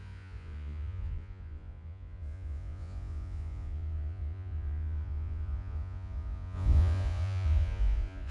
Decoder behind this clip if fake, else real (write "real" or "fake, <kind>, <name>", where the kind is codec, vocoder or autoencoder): fake, vocoder, Vocos